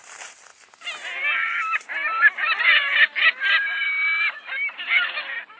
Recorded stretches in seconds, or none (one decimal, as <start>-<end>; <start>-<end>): 0.0-5.6